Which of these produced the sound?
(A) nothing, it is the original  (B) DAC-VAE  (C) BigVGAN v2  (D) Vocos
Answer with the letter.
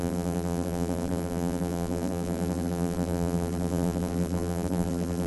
C